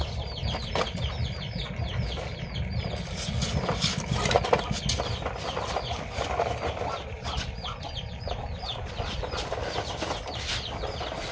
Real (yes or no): yes